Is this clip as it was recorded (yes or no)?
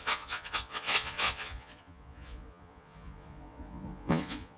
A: no